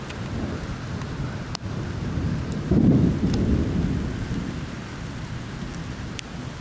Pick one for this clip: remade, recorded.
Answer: recorded